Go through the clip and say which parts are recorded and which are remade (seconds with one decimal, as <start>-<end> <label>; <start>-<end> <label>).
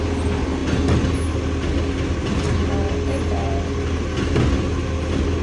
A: 0.0-5.4 recorded